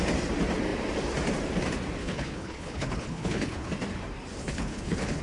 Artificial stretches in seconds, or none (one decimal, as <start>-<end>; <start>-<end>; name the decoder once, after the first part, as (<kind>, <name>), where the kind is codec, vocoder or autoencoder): 2.0-3.7 (codec, HILCodec); 4.4-5.2